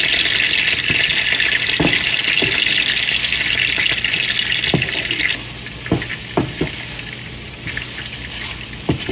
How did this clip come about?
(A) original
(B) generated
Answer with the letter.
A